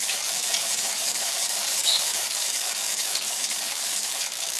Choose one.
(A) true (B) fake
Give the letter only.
B